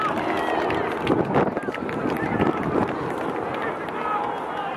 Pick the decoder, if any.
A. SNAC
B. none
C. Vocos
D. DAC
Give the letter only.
B